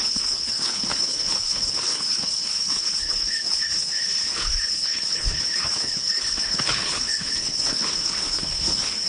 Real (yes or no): no